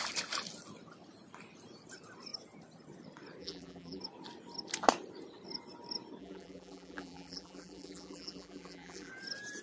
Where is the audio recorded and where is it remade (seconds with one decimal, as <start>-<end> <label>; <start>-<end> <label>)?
0.0-3.4 recorded; 3.4-4.0 remade; 4.0-6.2 recorded; 6.2-9.1 remade; 9.1-9.6 recorded